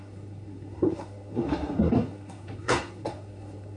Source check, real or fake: fake